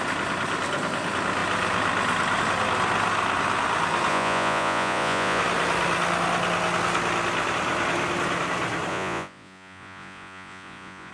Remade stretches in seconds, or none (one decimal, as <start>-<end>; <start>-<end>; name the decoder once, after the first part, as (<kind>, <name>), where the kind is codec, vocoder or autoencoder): 4.1-5.4 (vocoder, Vocos); 8.9-11.1